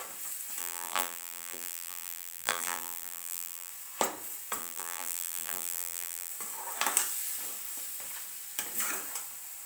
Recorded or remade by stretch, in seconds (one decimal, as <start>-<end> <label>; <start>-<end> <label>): 0.0-0.6 recorded; 0.6-3.7 remade; 3.7-4.6 recorded; 4.6-6.3 remade; 6.3-9.7 recorded